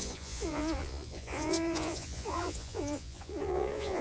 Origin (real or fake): fake